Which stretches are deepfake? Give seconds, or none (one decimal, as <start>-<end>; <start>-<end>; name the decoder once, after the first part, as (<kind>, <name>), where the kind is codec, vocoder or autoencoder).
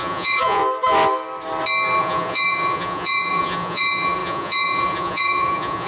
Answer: 0.0-0.6 (vocoder, Vocos); 2.0-5.9